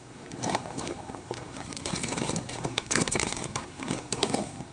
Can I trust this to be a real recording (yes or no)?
no